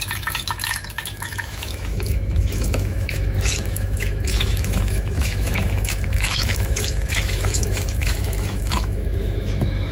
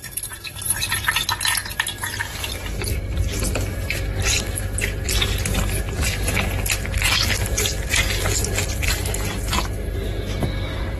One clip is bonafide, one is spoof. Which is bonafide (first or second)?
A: second